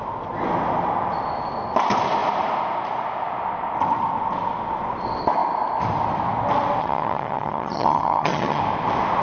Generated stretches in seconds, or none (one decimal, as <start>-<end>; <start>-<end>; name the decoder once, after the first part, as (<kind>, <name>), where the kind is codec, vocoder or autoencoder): 6.8-8.6 (vocoder, HiFi-GAN)